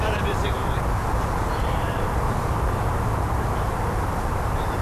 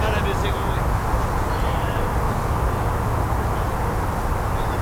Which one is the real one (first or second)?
second